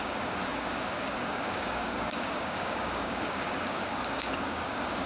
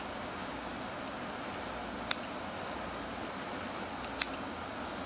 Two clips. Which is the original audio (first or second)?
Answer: second